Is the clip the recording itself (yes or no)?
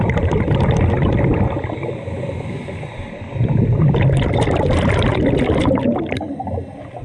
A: yes